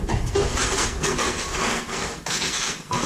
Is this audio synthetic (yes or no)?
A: yes